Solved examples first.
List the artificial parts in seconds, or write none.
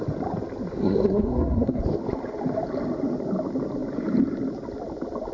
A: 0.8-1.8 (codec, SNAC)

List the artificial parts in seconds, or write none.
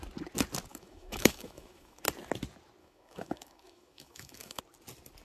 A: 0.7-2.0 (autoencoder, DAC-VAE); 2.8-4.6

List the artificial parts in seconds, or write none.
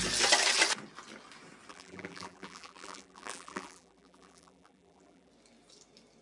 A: 1.7-5.3 (vocoder, BigVGAN v2)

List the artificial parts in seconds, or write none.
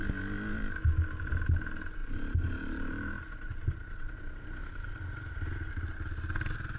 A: none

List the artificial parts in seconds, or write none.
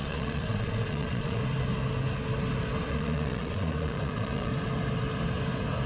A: 0.0-1.4 (vocoder, Vocos); 2.9-4.5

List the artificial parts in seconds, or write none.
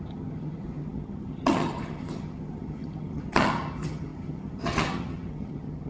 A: 0.0-5.9 (vocoder, HiFi-GAN)